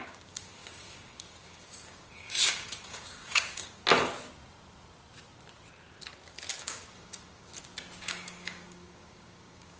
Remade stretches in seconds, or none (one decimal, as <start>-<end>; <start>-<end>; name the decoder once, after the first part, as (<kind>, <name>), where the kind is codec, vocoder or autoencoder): 0.0-3.8 (codec, DAC); 6.6-7.5; 8.0-9.8

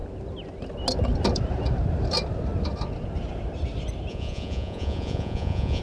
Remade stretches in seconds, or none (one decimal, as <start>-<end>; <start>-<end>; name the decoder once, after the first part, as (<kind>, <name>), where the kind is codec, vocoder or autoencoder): 4.1-5.8 (vocoder, Vocos)